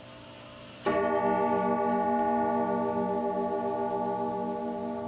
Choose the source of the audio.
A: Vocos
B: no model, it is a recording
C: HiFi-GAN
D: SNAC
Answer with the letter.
B